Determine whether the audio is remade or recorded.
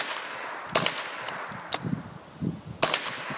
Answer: recorded